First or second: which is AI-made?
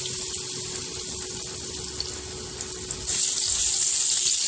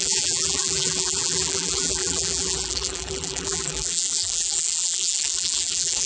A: second